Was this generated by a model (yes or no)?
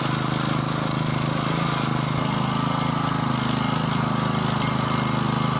no